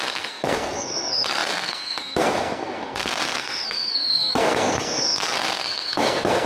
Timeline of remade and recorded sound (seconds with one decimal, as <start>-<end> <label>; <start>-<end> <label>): 0.0-6.5 remade